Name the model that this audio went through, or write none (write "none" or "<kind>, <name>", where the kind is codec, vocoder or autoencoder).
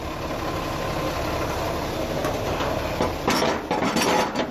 none